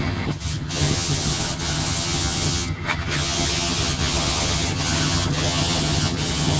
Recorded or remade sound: remade